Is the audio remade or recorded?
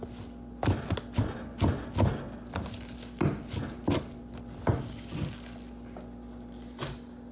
recorded